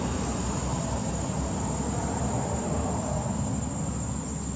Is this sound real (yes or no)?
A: yes